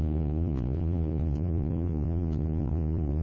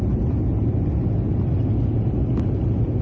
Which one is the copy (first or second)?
first